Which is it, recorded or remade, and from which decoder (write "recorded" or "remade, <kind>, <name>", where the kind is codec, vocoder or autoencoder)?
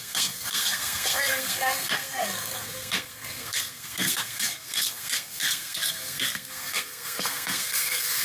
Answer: remade, codec, SNAC